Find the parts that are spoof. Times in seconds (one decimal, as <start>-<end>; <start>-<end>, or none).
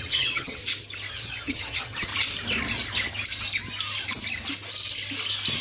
0.0-0.6; 1.1-2.1